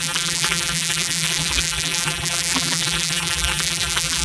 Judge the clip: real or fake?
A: fake